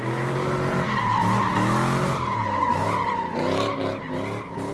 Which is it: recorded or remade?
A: recorded